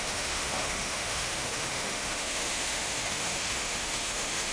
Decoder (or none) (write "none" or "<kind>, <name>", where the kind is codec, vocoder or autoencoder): autoencoder, DAC-VAE